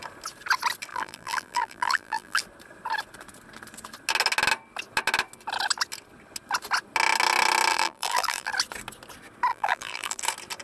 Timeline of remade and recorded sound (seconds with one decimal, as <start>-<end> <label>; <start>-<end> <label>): 0.0-0.9 recorded; 0.9-2.4 remade; 2.4-7.7 recorded; 7.7-8.5 remade; 8.5-9.5 recorded; 9.5-10.2 remade; 10.2-10.6 recorded